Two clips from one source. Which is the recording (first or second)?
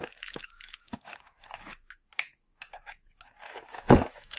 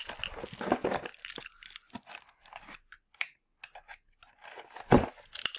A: second